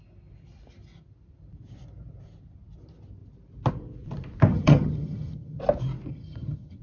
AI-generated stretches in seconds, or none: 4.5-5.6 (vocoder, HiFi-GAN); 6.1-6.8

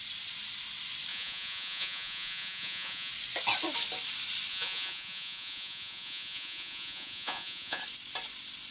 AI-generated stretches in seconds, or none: 1.1-3.1 (vocoder, Vocos); 4.5-7.8

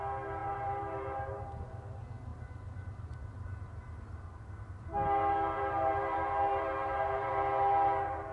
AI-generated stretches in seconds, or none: 0.4-1.4 (vocoder, BigVGAN v2); 2.3-7.3

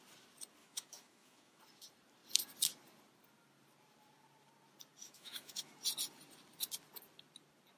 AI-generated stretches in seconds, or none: 0.6-1.6 (autoencoder, DAC-VAE); 5.0-5.7